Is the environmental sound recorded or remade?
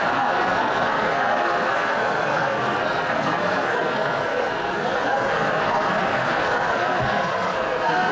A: remade